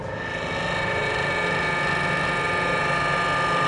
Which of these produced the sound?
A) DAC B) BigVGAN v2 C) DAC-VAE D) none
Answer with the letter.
D